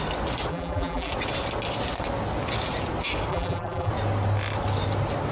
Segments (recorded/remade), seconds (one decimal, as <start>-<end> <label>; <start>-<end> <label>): 0.0-0.5 recorded; 0.5-1.1 remade; 1.1-3.3 recorded; 3.3-3.9 remade; 3.9-5.3 recorded